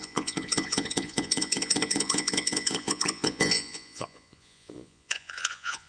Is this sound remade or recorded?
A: remade